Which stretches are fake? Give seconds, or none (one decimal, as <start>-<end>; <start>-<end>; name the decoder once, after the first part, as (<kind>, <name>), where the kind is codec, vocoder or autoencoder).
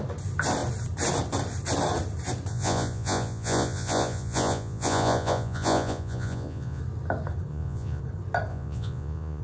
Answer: 2.5-6.8 (vocoder, Vocos); 7.5-8.0; 8.5-9.4